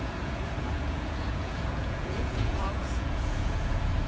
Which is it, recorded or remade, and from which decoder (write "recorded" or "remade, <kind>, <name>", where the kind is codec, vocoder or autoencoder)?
remade, vocoder, Vocos